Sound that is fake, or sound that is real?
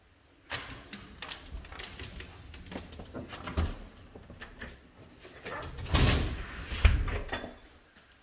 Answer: real